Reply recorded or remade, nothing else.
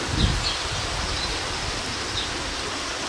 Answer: recorded